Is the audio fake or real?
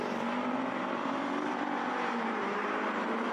fake